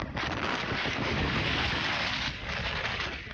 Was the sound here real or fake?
fake